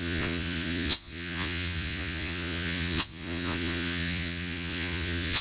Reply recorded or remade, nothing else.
remade